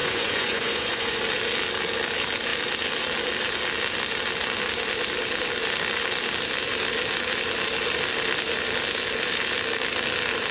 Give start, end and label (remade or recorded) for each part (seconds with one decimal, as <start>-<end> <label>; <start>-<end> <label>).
0.0-1.2 remade; 1.2-10.5 recorded